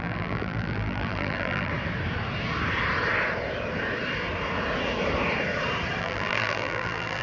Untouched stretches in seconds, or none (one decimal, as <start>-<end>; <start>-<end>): 1.7-6.0